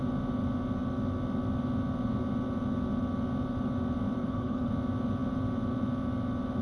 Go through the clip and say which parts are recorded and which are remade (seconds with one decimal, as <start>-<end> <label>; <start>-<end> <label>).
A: 0.0-4.2 recorded; 4.2-4.7 remade; 4.7-6.6 recorded